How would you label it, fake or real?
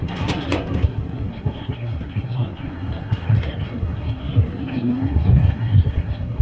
fake